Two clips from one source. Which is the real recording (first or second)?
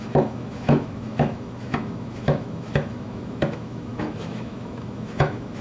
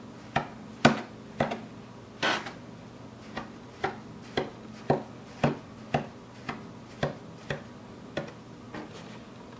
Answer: second